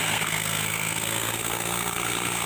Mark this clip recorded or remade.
remade